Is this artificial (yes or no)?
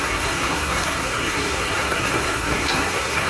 yes